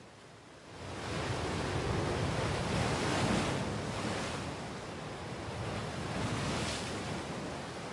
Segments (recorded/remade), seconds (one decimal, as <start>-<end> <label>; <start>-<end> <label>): 0.0-7.9 recorded